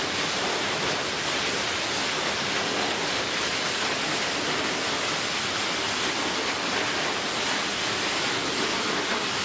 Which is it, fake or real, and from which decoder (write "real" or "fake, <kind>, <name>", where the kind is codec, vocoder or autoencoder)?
real